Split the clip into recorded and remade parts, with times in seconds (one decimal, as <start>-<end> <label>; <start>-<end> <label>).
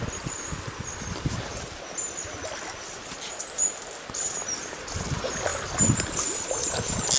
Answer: 0.0-1.5 recorded; 1.5-4.7 remade; 4.7-5.5 recorded; 5.5-6.2 remade; 6.2-7.2 recorded